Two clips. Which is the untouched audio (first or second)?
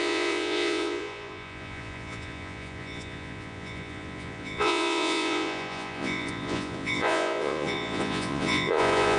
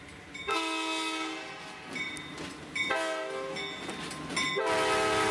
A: second